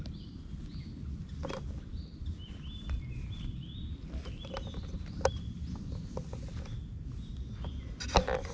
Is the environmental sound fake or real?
real